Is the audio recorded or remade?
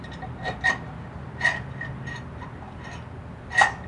recorded